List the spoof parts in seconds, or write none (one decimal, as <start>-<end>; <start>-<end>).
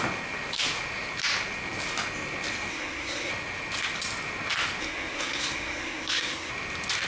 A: 2.7-3.3; 4.8-6.5